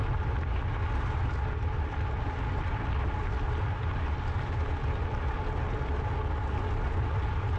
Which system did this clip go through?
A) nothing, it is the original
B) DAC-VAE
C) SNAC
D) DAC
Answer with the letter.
A